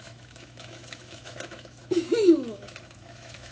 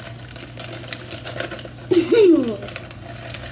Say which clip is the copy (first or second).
first